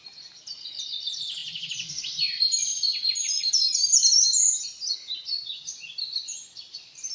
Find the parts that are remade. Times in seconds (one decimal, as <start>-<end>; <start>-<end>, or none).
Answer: 0.0-7.1